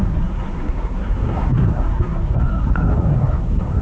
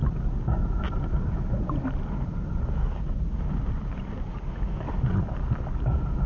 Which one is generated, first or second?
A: first